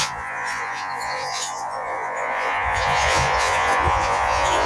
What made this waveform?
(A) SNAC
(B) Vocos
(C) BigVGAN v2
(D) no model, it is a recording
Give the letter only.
B